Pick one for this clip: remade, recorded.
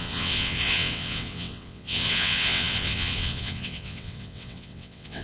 remade